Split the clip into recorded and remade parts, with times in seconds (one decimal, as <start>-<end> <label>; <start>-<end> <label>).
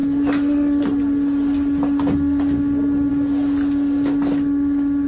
0.0-5.1 recorded